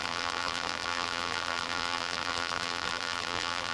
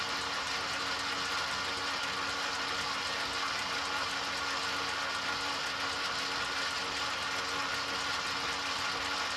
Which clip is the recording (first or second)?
second